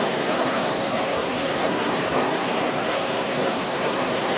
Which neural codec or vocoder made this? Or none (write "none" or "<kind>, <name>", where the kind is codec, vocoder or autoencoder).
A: codec, SNAC